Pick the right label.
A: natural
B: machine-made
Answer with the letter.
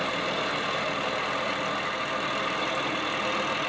A